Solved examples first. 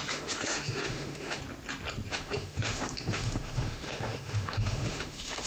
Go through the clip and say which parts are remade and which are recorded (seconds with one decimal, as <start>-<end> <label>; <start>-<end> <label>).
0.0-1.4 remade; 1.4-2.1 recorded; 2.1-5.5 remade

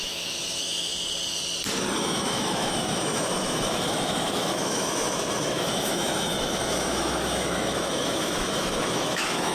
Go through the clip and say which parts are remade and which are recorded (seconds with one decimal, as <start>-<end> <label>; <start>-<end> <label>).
0.0-0.9 remade; 0.9-2.0 recorded; 2.0-9.5 remade

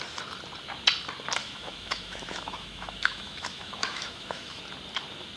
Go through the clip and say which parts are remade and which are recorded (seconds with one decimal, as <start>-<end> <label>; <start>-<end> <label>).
0.0-1.4 recorded; 1.4-4.6 remade; 4.6-5.4 recorded

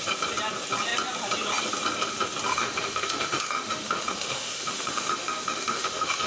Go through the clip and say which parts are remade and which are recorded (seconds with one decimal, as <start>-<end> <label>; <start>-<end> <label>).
0.0-2.5 recorded; 2.5-6.3 remade

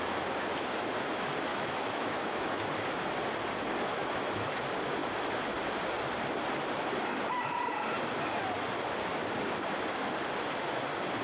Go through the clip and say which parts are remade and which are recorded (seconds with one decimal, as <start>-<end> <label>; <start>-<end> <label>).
0.0-1.5 recorded; 1.5-2.6 remade; 2.6-3.9 recorded; 3.9-4.6 remade; 4.6-11.2 recorded

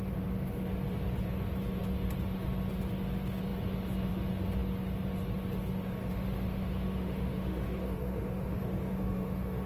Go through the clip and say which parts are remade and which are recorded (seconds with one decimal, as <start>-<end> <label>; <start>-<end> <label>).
0.0-6.0 recorded; 6.0-9.7 remade

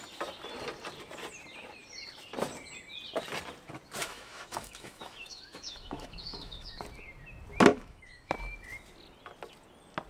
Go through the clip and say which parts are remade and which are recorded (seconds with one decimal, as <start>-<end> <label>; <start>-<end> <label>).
0.0-4.0 recorded; 4.0-6.8 remade; 6.8-7.7 recorded; 7.7-8.3 remade; 8.3-10.1 recorded